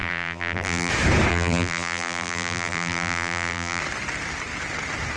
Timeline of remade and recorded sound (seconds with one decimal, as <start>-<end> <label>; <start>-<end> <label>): 0.0-0.9 remade; 0.9-1.3 recorded; 1.3-3.8 remade; 3.8-5.2 recorded